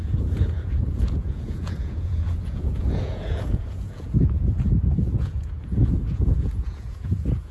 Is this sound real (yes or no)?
no